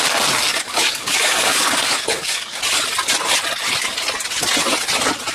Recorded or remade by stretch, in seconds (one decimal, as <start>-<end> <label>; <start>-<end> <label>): 0.0-0.5 recorded; 0.5-2.6 remade; 2.6-5.3 recorded